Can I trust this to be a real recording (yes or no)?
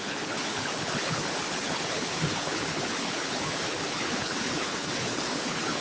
no